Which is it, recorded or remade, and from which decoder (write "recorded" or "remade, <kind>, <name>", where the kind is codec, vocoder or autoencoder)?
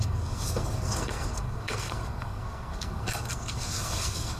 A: remade, codec, SNAC